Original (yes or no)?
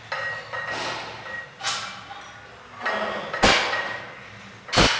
yes